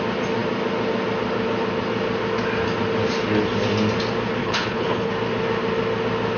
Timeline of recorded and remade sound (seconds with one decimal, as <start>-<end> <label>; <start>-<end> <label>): 0.0-4.4 recorded; 4.4-5.1 remade; 5.1-6.4 recorded